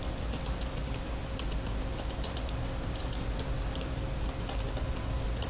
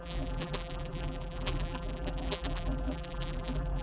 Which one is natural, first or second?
first